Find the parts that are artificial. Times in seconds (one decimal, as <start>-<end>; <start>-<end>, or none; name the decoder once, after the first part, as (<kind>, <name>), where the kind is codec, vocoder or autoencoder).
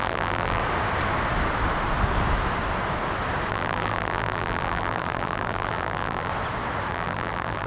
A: 0.0-0.6 (vocoder, BigVGAN v2); 3.5-6.3; 6.9-7.7